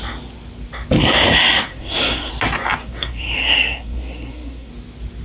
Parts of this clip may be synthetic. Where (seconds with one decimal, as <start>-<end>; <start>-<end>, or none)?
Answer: 1.7-2.3; 2.8-4.7